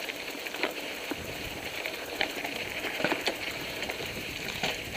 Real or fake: fake